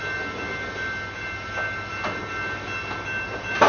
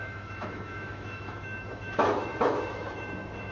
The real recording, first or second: first